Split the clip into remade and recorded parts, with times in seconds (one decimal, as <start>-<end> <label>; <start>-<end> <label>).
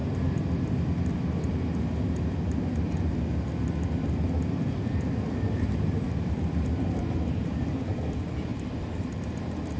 0.0-3.1 recorded; 3.1-7.6 remade; 7.6-8.5 recorded; 8.5-9.4 remade; 9.4-9.8 recorded